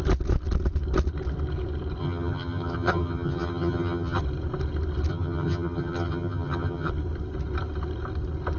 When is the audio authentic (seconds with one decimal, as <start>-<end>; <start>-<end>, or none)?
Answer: 0.0-2.0; 4.2-5.1; 6.9-8.6